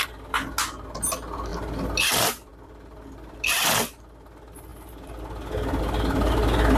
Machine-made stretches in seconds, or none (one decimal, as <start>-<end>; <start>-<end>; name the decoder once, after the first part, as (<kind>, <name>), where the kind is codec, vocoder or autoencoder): none